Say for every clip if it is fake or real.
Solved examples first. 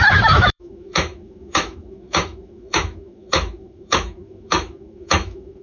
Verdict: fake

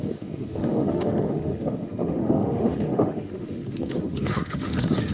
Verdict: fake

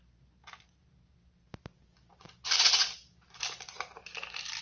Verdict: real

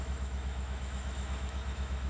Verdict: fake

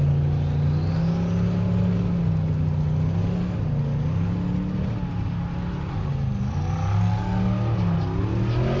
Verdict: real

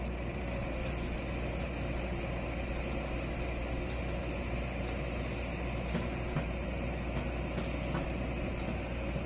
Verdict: real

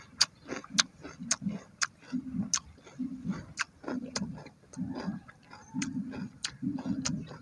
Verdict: real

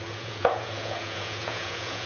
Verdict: fake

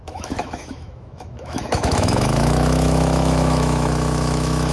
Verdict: fake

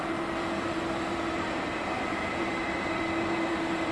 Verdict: fake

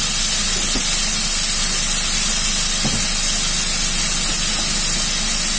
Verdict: real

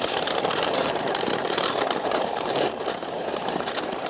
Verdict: fake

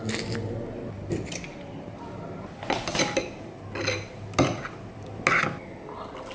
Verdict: real